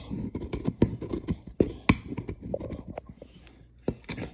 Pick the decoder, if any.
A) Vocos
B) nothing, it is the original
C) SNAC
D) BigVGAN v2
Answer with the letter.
B